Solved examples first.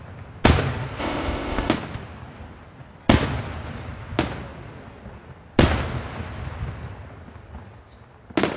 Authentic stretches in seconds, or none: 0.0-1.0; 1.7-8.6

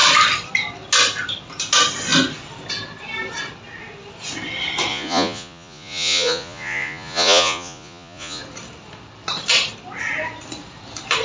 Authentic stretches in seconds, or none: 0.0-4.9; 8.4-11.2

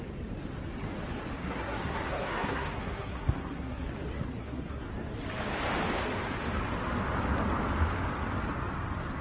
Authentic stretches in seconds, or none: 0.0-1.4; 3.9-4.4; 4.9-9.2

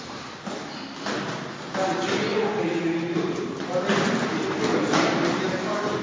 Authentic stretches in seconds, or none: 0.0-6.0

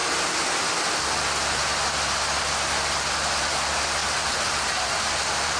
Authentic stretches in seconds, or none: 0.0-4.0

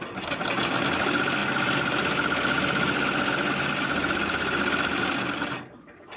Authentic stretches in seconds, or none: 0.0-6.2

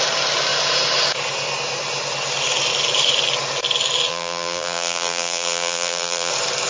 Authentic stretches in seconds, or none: 0.0-4.1; 6.3-6.7

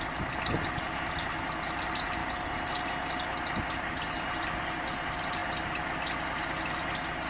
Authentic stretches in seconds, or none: 0.0-7.3